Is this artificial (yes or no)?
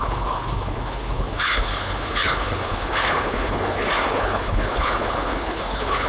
yes